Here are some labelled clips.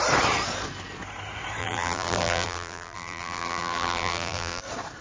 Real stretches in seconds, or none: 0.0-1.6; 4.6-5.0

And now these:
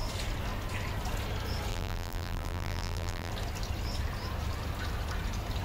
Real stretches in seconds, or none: 0.0-1.7; 3.3-5.6

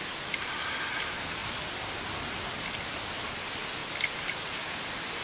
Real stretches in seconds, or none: 0.0-5.2

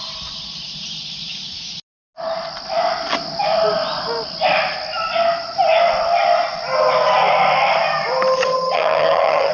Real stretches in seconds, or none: 0.0-8.4

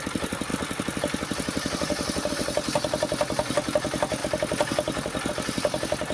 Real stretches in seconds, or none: 0.0-6.1